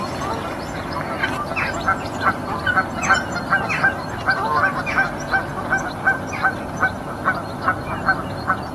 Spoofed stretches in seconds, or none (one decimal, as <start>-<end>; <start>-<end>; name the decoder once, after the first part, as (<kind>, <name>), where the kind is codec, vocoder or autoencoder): none